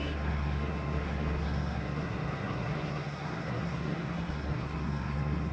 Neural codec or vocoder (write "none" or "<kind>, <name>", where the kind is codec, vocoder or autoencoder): codec, SNAC